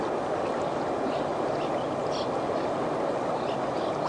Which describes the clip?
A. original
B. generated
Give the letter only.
A